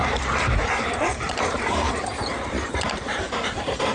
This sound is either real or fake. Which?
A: fake